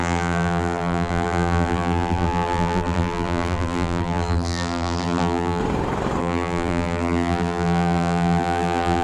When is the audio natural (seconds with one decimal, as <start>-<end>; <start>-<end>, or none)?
5.6-6.2